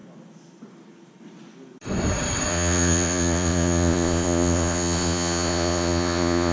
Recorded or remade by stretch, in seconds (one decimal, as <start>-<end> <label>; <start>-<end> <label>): 0.0-2.5 recorded; 2.5-6.5 remade